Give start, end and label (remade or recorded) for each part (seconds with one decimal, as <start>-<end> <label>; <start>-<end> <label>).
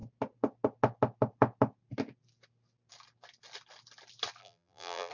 0.0-4.4 recorded; 4.4-5.1 remade